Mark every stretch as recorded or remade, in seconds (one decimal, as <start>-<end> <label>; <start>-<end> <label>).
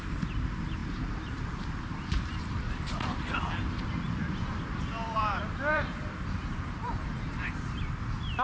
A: 0.0-0.8 recorded; 0.8-2.4 remade; 2.4-5.0 recorded; 5.0-7.9 remade; 7.9-8.4 recorded